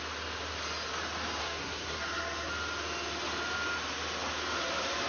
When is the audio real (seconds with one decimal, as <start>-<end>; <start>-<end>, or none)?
0.0-1.4; 2.5-5.1